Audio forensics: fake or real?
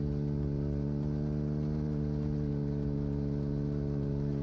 real